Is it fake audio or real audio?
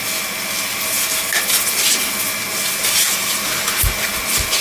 real